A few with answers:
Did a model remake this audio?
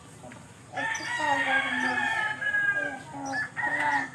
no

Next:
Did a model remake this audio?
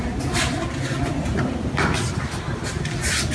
no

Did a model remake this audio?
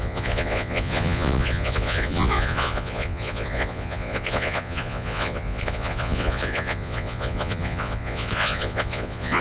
yes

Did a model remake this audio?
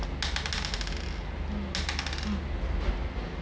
no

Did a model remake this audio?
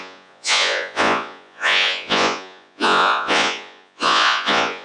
yes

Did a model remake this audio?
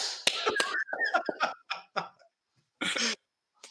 no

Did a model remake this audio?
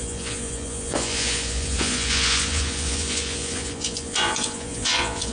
yes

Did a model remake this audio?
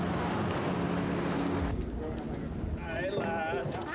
no